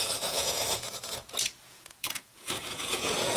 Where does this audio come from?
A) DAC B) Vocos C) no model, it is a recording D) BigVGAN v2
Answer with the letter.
B